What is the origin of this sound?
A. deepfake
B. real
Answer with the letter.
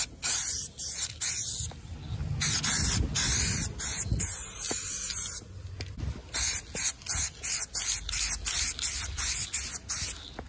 B